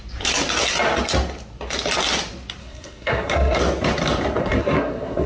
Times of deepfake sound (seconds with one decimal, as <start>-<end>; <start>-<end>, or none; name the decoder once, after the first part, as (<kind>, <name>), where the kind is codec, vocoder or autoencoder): 2.6-3.6 (codec, SNAC); 4.4-5.3